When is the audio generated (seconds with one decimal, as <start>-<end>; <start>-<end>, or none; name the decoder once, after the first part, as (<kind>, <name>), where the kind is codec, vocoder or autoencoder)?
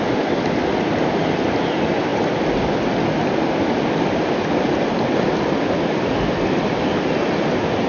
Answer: none